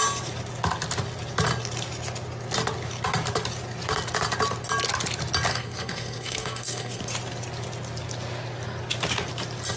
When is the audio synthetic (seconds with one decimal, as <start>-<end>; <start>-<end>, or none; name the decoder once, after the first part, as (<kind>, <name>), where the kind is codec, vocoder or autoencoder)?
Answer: 5.5-7.0 (codec, SNAC)